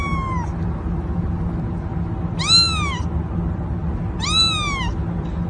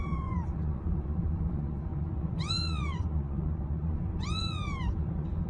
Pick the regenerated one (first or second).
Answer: second